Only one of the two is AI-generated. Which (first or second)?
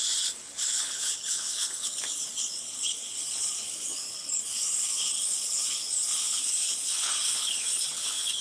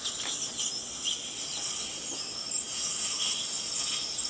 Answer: first